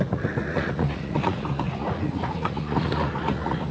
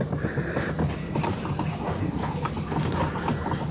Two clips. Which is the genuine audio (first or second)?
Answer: second